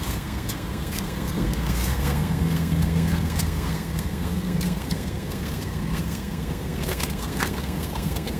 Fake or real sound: fake